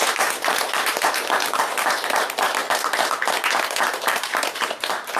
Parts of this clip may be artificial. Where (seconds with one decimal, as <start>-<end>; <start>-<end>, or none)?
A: 0.0-2.6; 3.8-5.2